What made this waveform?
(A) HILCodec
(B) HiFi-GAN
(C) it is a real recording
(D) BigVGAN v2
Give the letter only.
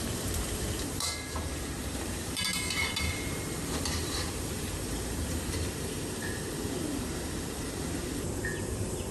D